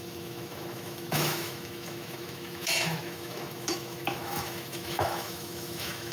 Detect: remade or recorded remade